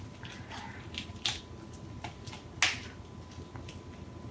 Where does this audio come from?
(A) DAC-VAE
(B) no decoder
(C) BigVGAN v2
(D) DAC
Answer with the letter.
B